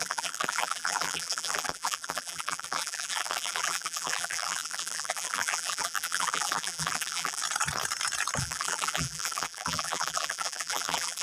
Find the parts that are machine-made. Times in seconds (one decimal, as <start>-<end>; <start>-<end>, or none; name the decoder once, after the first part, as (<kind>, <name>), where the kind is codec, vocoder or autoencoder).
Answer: 0.0-7.4 (vocoder, BigVGAN v2); 8.4-11.2